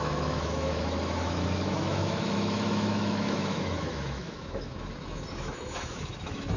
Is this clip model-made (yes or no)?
yes